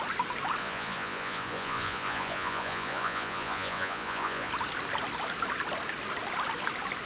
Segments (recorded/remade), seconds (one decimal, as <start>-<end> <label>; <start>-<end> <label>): 0.0-0.6 recorded; 0.6-4.5 remade; 4.5-7.0 recorded